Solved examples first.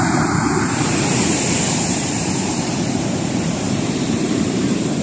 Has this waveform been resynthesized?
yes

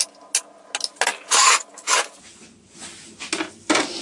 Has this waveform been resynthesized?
no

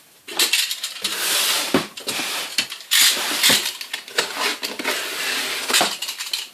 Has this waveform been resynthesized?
no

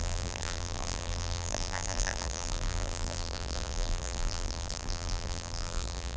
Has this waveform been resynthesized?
yes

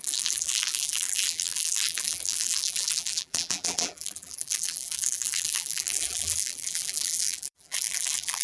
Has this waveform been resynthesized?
yes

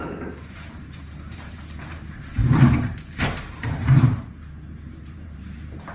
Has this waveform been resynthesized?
yes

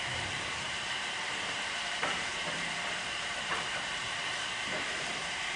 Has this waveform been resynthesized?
yes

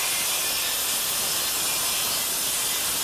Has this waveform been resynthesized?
no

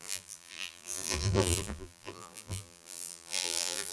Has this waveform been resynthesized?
yes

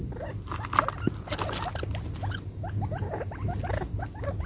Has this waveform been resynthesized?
no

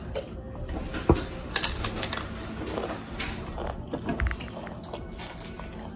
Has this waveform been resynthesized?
no